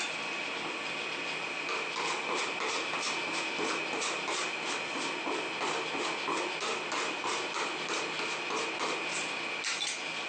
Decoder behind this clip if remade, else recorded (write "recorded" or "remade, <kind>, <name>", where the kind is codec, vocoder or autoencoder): recorded